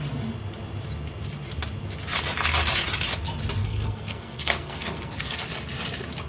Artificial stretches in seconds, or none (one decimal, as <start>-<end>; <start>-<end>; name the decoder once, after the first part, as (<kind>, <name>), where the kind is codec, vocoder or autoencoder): 3.6-5.5 (codec, SNAC)